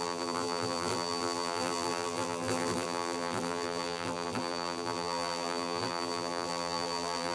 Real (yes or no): no